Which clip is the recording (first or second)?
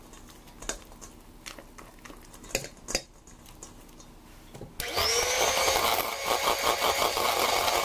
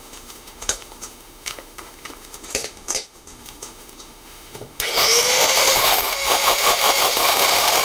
first